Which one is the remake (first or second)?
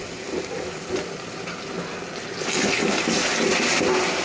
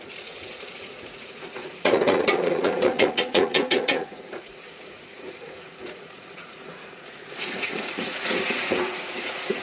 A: second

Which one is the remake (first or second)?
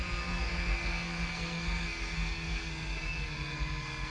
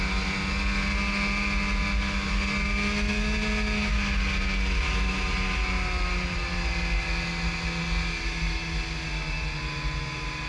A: first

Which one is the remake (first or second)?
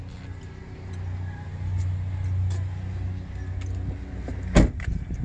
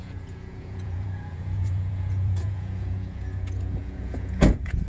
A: second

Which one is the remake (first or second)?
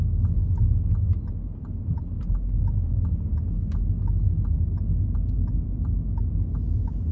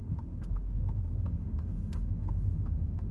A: second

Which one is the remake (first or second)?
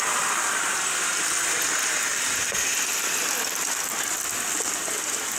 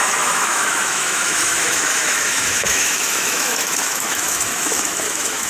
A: second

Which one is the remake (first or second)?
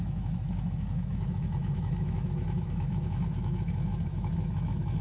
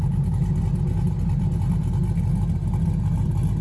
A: first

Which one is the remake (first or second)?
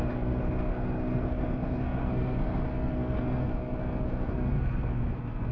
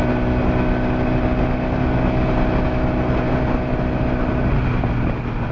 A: first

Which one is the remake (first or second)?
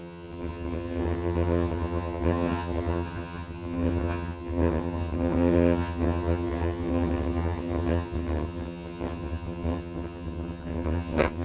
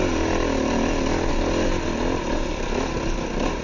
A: first